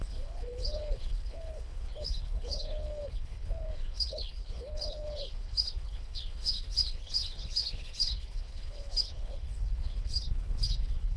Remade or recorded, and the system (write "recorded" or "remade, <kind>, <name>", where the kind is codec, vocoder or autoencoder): remade, codec, HILCodec